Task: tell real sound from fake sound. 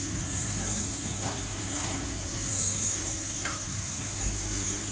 fake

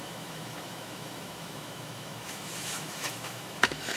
fake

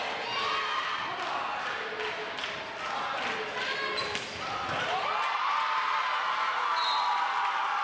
real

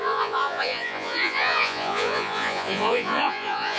fake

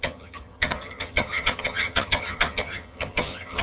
fake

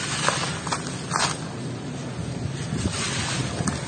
real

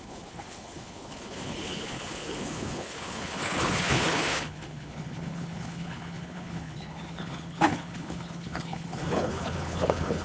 fake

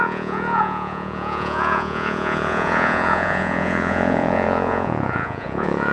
fake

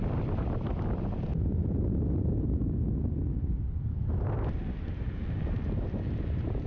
fake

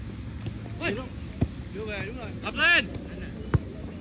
real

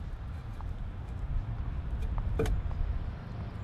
real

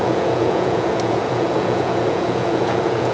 fake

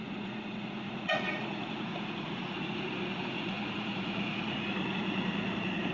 fake